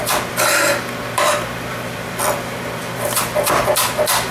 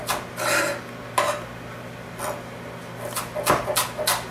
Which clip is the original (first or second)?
second